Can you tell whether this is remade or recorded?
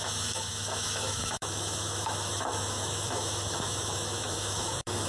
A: remade